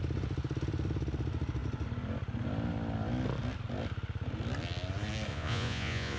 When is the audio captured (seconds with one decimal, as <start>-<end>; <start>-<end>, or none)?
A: 0.0-5.3